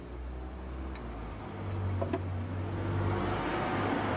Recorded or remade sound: recorded